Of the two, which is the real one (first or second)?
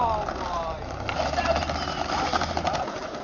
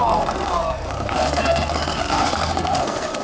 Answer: first